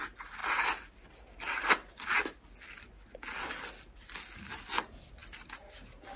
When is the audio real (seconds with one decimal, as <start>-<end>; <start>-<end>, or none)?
0.0-6.2